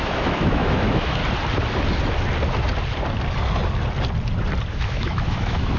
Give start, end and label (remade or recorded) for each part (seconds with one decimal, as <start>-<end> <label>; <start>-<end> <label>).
0.0-1.2 remade; 1.2-4.7 recorded; 4.7-5.8 remade